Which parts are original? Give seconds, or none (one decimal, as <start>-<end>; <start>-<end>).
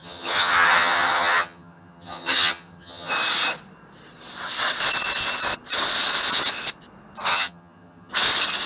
3.1-7.3; 8.1-8.7